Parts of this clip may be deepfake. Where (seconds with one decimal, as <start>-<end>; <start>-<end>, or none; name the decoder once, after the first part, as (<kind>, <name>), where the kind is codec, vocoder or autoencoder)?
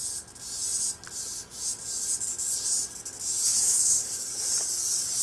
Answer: 3.5-4.3 (codec, DAC)